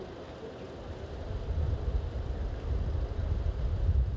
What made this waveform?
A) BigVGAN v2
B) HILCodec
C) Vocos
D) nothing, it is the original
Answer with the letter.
D